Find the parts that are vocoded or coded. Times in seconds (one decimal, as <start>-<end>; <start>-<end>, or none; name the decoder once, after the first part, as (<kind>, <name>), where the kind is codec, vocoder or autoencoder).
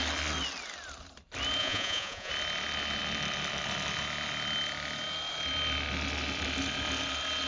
1.6-2.3 (vocoder, Vocos)